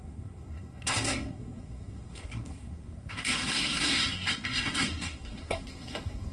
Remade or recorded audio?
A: remade